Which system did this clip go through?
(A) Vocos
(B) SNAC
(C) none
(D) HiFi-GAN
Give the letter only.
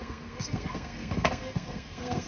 B